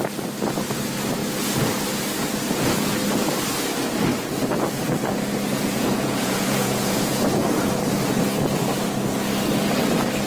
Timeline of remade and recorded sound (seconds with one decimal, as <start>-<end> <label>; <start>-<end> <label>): 0.0-5.6 recorded; 5.6-7.8 remade; 7.8-10.3 recorded